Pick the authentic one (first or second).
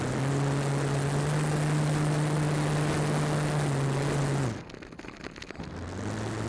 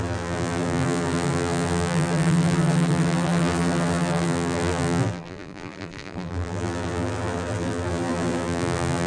first